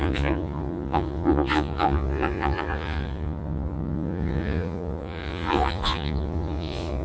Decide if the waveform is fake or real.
fake